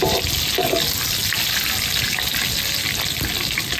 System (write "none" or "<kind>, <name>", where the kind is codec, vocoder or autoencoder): none